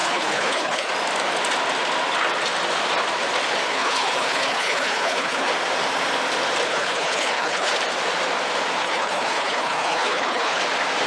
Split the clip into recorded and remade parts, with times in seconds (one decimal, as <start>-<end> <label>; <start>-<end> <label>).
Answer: 0.0-0.9 remade; 0.9-3.7 recorded; 3.7-5.5 remade; 5.5-6.7 recorded; 6.7-7.7 remade; 7.7-8.8 recorded; 8.8-10.6 remade; 10.6-11.1 recorded